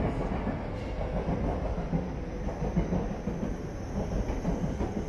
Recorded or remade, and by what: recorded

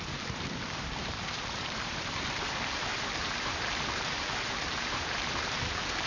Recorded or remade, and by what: remade, vocoder, BigVGAN v2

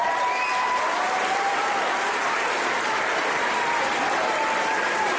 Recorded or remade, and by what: remade, vocoder, BigVGAN v2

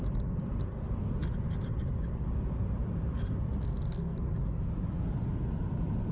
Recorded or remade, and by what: recorded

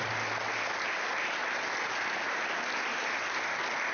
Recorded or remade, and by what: recorded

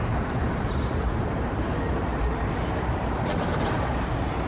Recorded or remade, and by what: remade, vocoder, BigVGAN v2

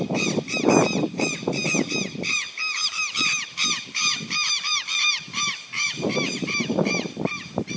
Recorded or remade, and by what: remade, vocoder, BigVGAN v2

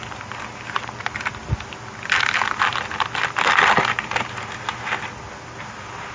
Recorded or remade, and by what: recorded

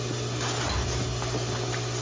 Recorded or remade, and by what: recorded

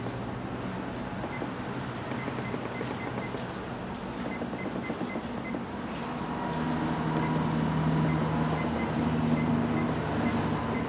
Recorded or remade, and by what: recorded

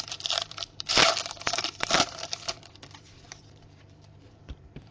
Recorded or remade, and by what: remade, vocoder, BigVGAN v2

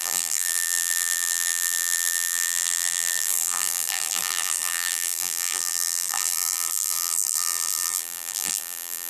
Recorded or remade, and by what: remade, vocoder, BigVGAN v2